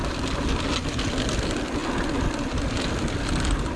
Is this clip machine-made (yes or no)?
no